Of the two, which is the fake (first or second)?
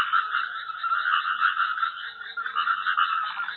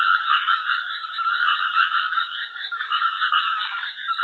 second